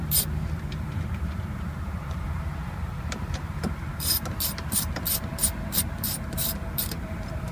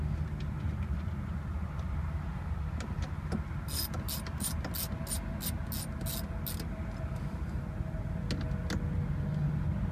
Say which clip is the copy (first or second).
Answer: first